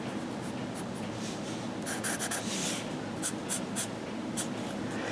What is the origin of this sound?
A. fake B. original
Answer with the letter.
B